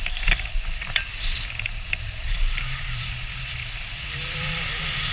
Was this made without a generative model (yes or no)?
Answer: no